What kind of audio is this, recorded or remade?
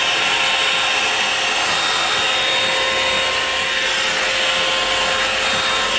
recorded